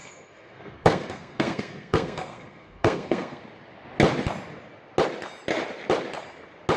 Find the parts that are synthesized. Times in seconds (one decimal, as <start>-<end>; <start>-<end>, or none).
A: 0.0-3.4